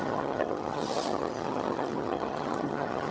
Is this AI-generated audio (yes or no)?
yes